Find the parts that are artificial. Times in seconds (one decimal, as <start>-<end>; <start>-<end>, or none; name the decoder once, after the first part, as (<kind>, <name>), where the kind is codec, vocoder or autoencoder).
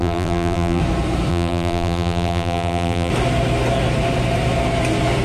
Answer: 0.0-0.8 (vocoder, BigVGAN v2); 1.3-3.1